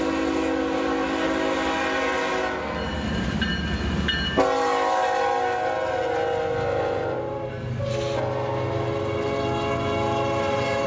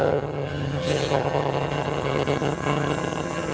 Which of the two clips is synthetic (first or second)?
second